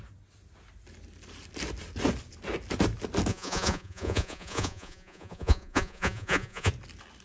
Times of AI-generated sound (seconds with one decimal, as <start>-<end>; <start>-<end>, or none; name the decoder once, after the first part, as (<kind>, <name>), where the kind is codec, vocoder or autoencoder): 3.3-6.7 (vocoder, Vocos)